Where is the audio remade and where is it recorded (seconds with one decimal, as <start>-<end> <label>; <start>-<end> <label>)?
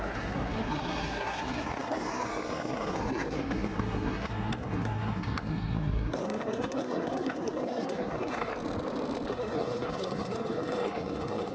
0.0-8.5 remade; 8.5-9.3 recorded; 9.3-11.5 remade